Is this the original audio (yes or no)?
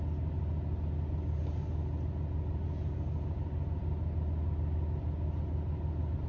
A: yes